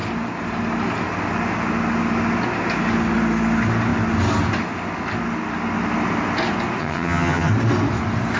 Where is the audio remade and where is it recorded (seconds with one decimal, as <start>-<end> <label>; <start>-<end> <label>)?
0.0-6.8 recorded; 6.8-7.5 remade; 7.5-8.4 recorded